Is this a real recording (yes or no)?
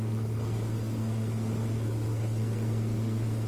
no